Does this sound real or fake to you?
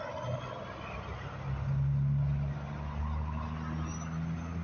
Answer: real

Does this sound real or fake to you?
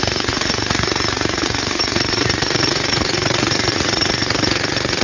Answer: fake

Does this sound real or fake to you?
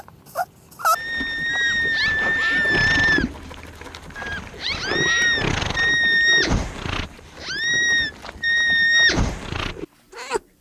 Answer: real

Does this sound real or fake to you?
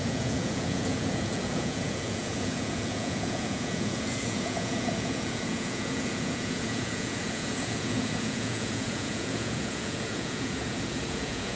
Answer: fake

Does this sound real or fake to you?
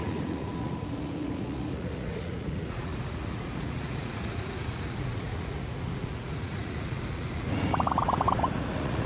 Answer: fake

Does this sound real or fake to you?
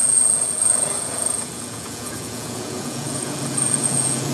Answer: fake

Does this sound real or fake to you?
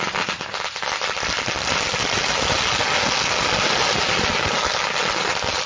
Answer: real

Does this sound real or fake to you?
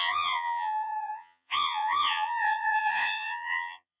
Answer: fake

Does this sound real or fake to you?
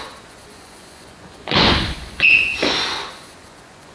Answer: fake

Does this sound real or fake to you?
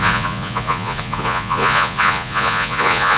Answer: fake